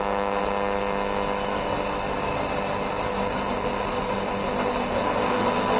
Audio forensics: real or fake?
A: real